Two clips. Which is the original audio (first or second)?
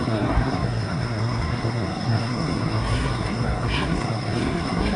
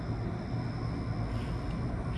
second